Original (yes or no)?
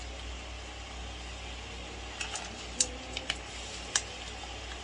yes